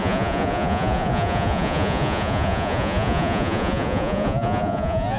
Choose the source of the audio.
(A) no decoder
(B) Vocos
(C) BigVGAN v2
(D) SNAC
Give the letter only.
B